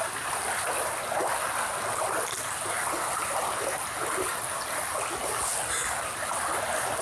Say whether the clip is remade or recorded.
recorded